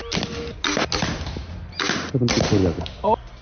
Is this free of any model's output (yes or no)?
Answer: yes